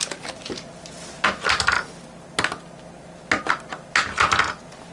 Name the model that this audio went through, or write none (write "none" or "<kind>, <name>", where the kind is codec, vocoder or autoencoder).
none